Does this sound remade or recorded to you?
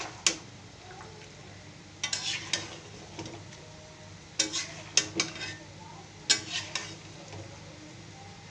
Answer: recorded